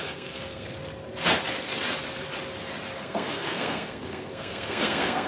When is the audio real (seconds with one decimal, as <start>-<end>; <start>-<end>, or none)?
0.7-3.0